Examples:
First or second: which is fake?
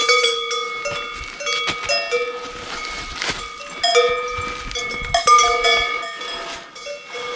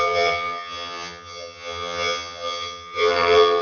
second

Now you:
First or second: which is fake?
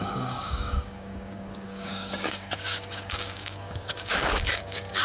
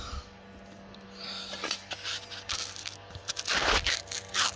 first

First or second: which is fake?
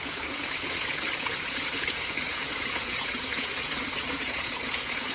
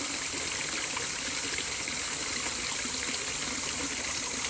first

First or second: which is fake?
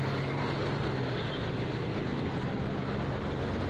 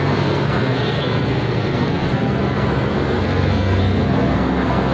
second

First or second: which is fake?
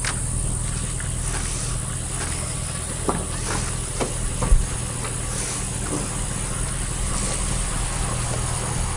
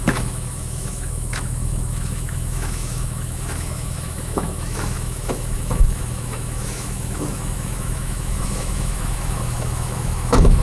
second